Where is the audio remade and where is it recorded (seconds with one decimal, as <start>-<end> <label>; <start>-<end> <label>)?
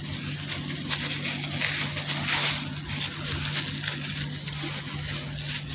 0.0-5.7 recorded